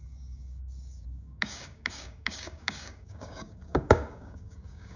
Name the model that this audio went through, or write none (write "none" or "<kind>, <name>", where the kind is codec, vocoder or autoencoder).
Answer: codec, DAC